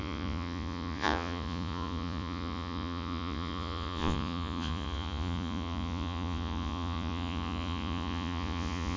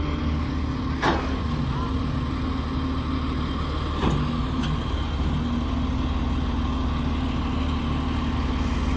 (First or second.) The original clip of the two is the second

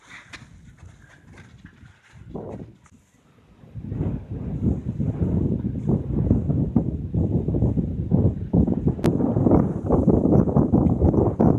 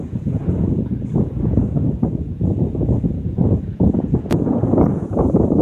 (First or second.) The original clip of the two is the first